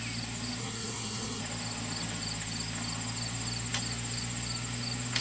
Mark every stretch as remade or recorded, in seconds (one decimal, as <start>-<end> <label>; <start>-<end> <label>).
0.0-0.6 recorded; 0.6-1.4 remade; 1.4-5.2 recorded